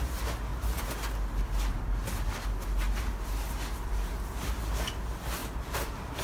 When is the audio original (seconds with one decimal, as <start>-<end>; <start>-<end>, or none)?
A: 0.5-3.0